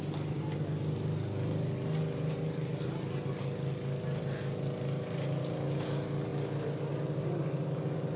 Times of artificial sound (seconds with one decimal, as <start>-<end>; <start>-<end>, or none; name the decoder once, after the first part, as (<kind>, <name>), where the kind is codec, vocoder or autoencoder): none